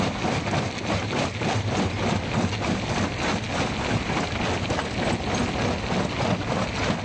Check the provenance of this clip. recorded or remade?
recorded